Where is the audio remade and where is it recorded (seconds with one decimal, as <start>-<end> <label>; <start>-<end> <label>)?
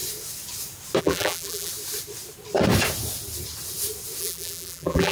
0.0-1.0 recorded; 1.0-1.7 remade; 1.7-4.2 recorded; 4.2-5.1 remade